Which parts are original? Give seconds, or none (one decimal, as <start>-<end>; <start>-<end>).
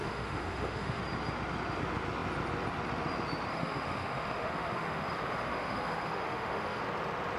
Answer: 1.0-3.5; 6.8-7.4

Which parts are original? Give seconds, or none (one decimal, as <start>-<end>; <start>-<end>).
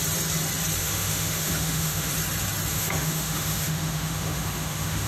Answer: 0.0-0.8; 2.1-2.7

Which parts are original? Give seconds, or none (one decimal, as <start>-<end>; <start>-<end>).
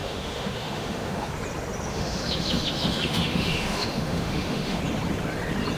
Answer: 1.3-1.9; 4.8-5.8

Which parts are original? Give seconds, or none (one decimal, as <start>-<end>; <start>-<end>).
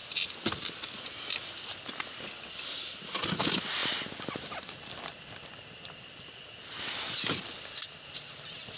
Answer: 0.0-8.8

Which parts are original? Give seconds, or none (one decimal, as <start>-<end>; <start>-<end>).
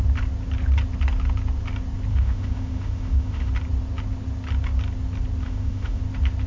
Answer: 0.0-2.1; 3.5-5.4; 6.0-6.5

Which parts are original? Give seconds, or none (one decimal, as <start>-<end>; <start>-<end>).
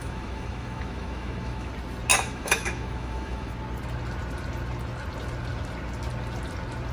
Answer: 1.7-2.1; 3.5-6.9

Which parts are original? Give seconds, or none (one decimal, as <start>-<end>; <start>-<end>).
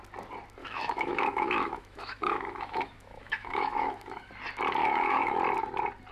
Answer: 0.0-0.6; 4.3-4.8; 5.4-6.1